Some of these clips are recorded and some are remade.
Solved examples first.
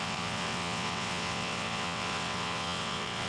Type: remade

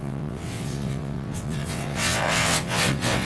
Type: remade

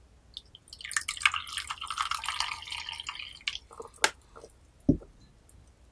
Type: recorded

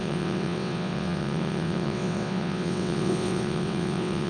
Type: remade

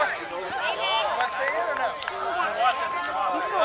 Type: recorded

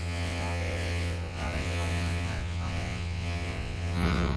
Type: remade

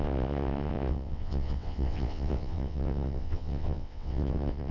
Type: remade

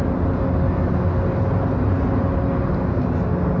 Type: recorded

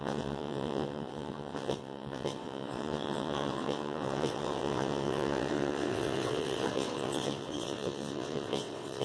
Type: remade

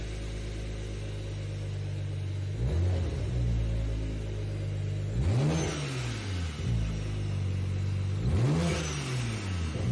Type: recorded